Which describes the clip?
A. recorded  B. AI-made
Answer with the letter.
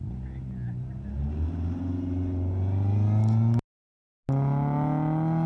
A